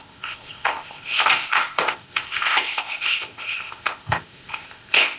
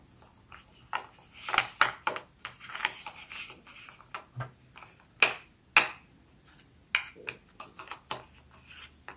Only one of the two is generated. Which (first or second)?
first